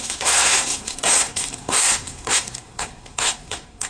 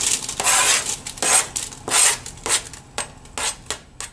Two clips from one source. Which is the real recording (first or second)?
second